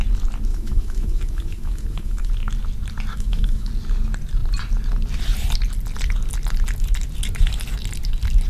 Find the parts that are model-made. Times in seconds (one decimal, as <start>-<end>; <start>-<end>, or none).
0.5-2.3; 3.1-3.7

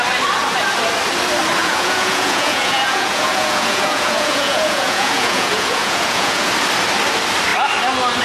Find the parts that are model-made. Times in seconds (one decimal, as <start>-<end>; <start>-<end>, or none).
1.6-6.5

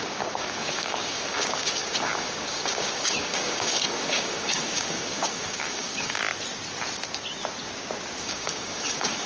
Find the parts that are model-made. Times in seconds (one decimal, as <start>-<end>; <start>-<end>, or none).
0.0-6.2; 8.2-9.3

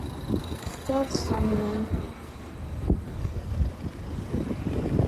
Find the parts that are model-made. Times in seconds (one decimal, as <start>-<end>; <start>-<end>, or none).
0.4-3.5

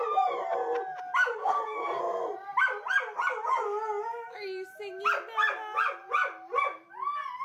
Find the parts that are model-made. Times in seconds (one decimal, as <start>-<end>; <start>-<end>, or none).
1.4-2.0

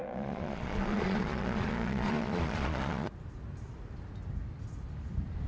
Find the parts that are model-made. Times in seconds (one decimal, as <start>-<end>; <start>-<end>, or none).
0.0-3.1

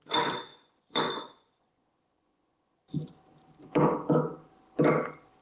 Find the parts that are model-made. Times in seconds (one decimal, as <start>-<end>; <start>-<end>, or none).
0.5-2.7